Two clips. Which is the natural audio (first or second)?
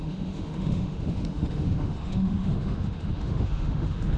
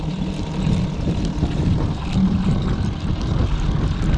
second